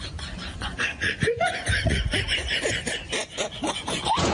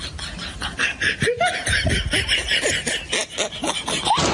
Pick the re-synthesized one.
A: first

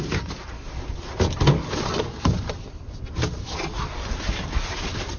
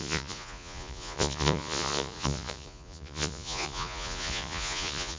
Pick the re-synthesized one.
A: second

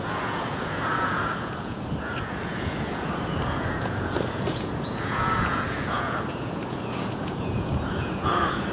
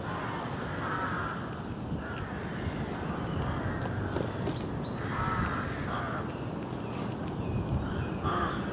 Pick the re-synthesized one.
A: first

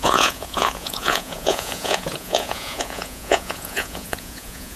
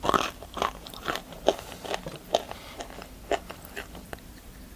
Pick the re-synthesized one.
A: first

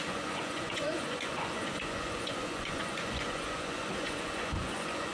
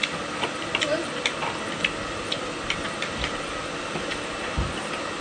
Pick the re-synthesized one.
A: first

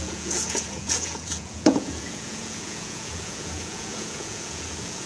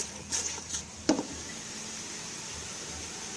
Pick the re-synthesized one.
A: first